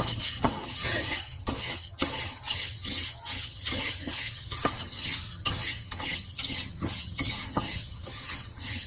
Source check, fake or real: fake